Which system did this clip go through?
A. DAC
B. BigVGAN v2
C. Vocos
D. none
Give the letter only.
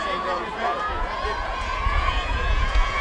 C